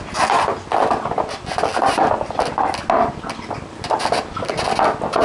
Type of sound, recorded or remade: recorded